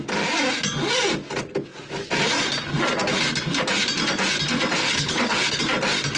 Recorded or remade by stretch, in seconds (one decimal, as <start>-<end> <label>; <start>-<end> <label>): 0.0-4.8 recorded; 4.8-5.6 remade; 5.6-6.2 recorded